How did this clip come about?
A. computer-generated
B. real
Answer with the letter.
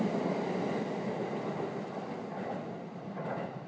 B